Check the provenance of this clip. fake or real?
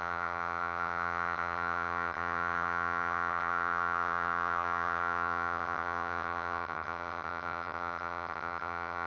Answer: fake